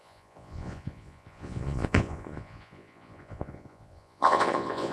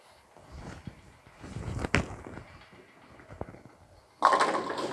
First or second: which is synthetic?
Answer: first